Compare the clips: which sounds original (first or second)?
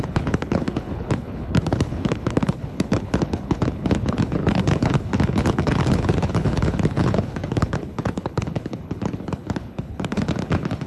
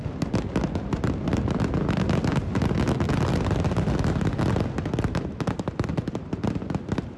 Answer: second